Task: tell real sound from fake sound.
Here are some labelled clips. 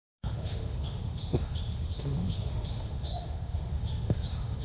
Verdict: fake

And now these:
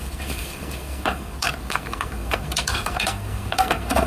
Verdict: fake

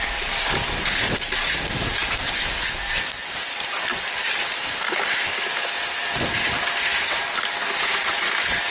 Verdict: real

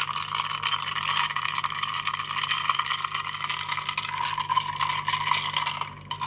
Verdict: real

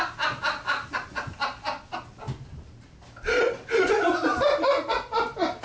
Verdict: real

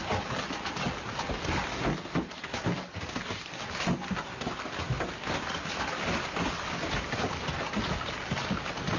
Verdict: real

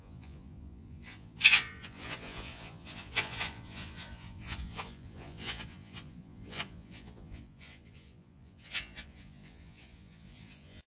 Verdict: fake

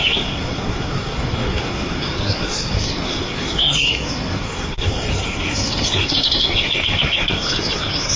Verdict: fake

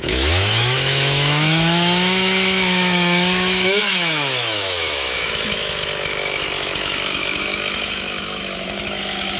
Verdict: fake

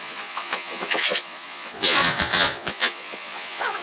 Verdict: fake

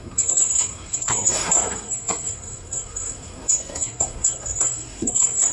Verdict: fake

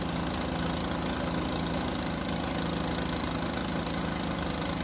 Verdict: real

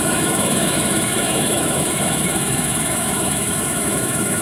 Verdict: fake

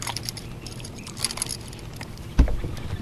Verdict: real